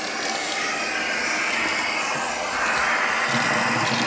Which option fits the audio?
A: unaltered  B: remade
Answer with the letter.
A